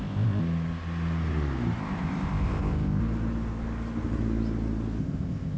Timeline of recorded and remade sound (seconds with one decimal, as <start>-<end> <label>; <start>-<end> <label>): 0.0-0.4 remade; 0.4-1.8 recorded; 1.8-3.0 remade; 3.0-5.0 recorded; 5.0-5.6 remade

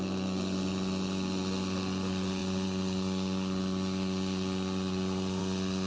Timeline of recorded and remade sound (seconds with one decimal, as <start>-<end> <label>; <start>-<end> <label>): 0.0-5.9 recorded